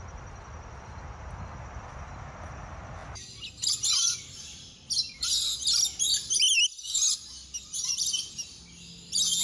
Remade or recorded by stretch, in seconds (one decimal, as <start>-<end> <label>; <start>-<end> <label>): 0.0-9.4 recorded